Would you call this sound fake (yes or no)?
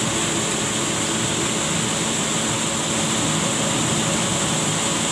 no